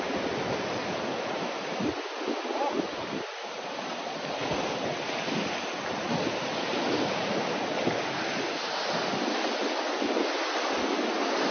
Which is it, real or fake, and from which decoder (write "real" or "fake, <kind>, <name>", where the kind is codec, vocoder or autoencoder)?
real